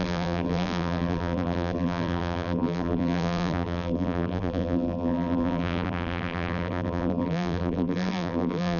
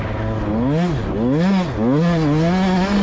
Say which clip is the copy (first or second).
first